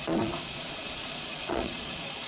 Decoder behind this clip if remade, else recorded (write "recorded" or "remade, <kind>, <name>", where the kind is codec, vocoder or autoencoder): remade, vocoder, Vocos